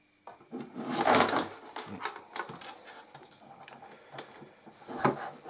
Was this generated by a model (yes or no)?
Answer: no